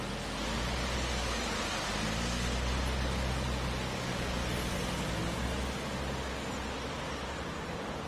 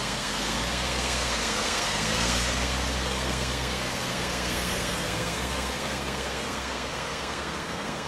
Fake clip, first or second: second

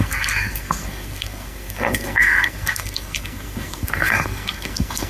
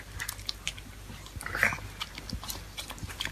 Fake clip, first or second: first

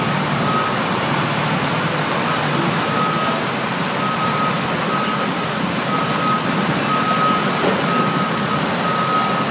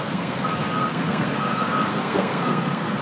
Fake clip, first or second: second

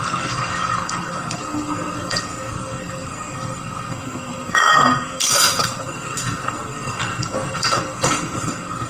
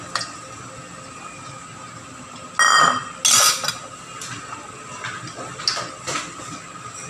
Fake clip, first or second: first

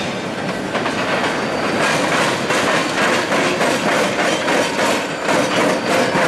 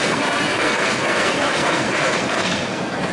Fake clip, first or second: second